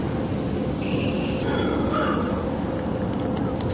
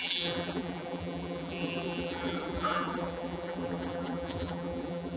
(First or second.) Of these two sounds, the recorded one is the first